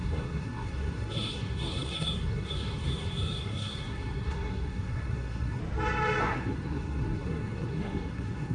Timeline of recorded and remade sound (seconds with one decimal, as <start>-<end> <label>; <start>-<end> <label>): 0.0-5.6 remade; 5.6-6.2 recorded; 6.2-8.5 remade